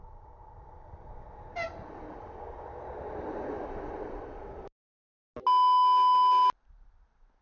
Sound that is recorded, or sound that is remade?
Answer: recorded